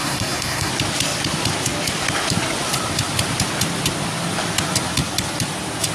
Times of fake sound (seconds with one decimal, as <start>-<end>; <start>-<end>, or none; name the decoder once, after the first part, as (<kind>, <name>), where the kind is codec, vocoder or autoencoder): 0.0-0.7 (codec, SNAC)